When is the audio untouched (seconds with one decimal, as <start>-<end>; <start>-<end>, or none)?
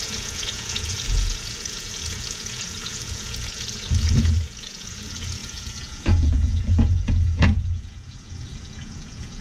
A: none